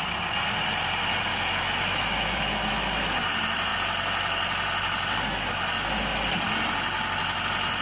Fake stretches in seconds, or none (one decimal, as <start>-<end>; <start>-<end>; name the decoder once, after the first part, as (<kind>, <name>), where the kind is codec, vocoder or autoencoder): 1.3-2.7 (autoencoder, DAC-VAE)

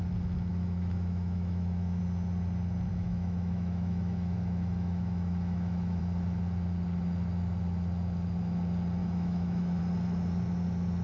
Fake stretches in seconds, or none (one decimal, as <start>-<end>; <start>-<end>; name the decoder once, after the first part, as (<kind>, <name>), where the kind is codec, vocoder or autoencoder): 0.5-2.0 (autoencoder, DAC-VAE); 2.9-6.0; 9.0-9.8

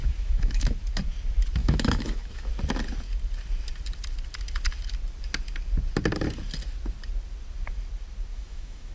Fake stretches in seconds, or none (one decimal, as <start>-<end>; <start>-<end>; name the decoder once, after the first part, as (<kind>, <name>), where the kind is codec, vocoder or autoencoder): 0.0-0.7 (autoencoder, DAC-VAE); 1.6-2.5; 8.3-8.9

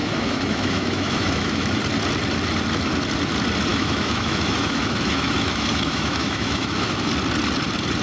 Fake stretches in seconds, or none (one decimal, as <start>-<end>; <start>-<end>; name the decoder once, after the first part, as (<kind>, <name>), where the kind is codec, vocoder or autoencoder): 0.0-1.8 (autoencoder, DAC-VAE); 3.7-7.1

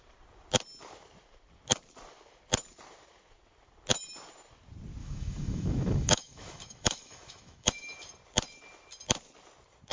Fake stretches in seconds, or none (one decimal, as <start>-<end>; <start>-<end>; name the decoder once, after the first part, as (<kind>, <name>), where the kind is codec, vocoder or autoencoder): 5.0-7.7 (autoencoder, DAC-VAE)

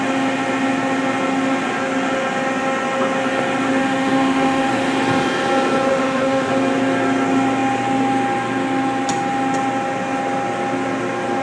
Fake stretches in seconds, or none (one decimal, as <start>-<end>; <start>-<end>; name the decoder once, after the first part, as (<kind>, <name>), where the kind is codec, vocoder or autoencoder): 3.8-4.7 (autoencoder, DAC-VAE); 5.9-6.5

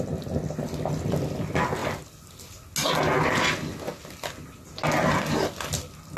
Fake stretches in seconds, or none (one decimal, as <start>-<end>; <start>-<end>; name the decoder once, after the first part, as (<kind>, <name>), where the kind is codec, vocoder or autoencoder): none

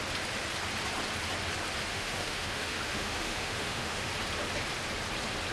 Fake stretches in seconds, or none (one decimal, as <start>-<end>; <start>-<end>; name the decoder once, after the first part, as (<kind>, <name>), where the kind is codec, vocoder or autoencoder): 1.9-4.1 (autoencoder, DAC-VAE)